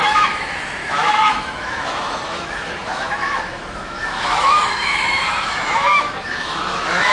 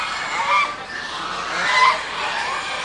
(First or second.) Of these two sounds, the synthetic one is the first